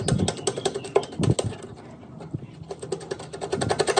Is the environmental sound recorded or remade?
recorded